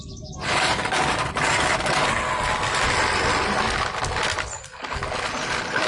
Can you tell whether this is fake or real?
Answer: real